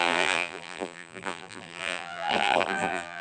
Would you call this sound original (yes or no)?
no